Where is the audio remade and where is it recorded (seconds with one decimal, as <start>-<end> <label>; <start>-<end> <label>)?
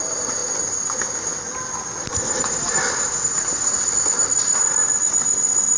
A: 0.0-5.8 recorded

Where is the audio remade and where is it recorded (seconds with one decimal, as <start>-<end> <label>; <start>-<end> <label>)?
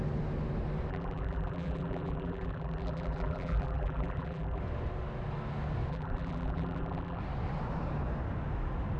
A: 0.0-0.9 recorded; 0.9-4.6 remade; 4.6-5.9 recorded; 5.9-7.2 remade; 7.2-9.0 recorded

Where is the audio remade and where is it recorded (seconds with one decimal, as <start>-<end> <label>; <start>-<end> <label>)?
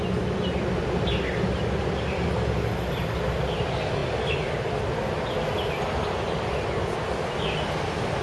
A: 0.0-8.2 recorded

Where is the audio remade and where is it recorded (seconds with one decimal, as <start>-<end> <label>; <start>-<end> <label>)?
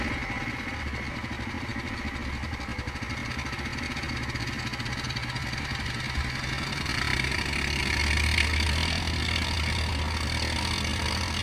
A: 0.0-11.4 recorded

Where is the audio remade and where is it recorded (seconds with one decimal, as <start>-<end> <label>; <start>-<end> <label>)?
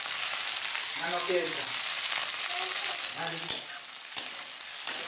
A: 0.0-2.2 recorded; 2.2-3.7 remade; 3.7-5.1 recorded